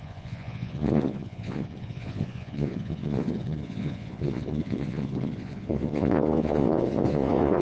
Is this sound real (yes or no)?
no